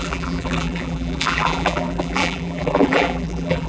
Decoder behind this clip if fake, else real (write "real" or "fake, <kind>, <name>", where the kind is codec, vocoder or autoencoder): fake, vocoder, BigVGAN v2